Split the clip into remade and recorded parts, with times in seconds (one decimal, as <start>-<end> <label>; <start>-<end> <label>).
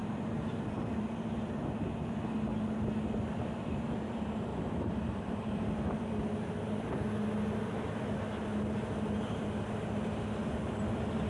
0.0-0.8 remade; 0.8-4.5 recorded; 4.5-6.1 remade; 6.1-11.3 recorded